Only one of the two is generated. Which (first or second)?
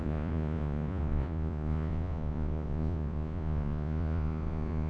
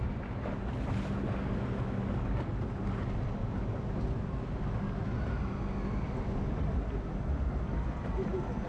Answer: first